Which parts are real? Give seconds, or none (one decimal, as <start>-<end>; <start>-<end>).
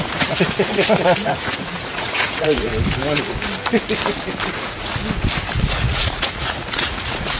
2.7-4.5; 5.0-5.7